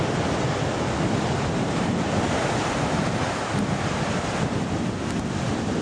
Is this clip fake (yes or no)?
no